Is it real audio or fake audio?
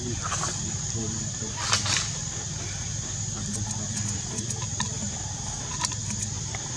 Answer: fake